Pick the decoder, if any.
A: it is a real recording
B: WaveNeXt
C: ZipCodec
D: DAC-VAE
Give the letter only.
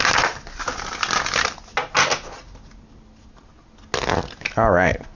A